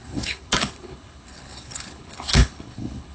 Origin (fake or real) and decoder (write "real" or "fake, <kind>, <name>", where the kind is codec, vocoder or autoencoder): fake, codec, HILCodec